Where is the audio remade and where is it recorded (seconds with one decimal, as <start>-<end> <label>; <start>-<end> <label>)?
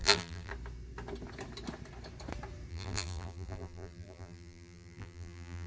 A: 0.0-0.5 remade; 0.5-2.7 recorded; 2.7-5.7 remade